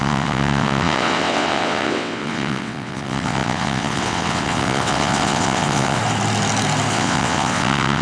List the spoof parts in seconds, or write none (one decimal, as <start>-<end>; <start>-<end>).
0.0-6.0; 6.9-8.0